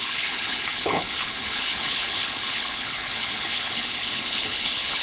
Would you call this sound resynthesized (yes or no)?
yes